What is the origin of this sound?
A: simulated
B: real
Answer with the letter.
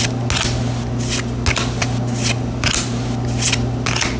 B